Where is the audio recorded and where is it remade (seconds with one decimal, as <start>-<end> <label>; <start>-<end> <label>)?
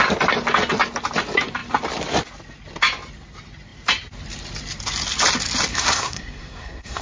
0.0-5.7 recorded; 5.7-7.0 remade